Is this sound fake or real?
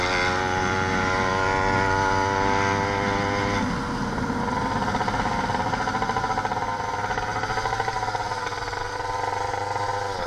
real